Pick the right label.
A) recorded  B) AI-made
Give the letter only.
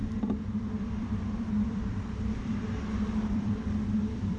B